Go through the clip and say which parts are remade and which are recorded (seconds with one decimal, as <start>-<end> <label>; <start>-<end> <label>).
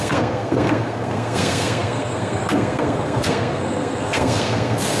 0.0-5.0 remade